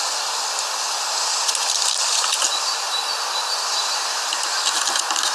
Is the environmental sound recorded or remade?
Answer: recorded